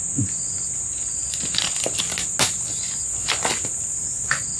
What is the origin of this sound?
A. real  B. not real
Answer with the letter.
A